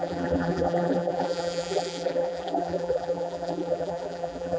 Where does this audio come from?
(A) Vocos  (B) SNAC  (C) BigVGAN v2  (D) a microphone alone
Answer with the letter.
C